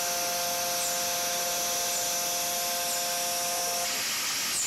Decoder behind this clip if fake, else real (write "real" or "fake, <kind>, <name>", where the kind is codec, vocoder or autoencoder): real